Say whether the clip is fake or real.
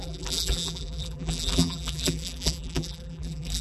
fake